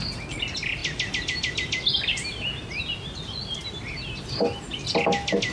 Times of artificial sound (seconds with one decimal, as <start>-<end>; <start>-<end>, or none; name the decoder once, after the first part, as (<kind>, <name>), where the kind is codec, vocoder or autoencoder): none